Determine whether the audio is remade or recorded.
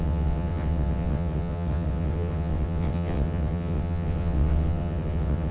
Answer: remade